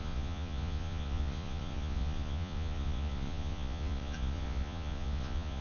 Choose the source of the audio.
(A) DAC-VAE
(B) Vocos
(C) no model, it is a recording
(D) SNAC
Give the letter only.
B